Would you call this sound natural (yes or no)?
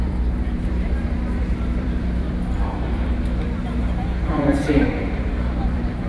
no